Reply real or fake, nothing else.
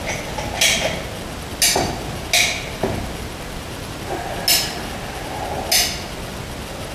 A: real